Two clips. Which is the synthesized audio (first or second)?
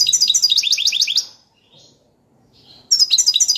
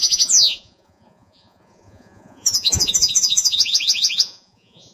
second